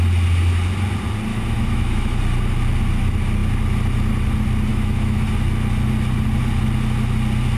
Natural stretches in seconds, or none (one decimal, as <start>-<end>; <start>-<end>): 0.0-1.3; 2.2-4.7; 5.3-7.6